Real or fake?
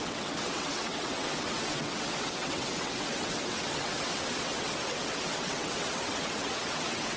fake